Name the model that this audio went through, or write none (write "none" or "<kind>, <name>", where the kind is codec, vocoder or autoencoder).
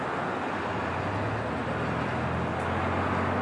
none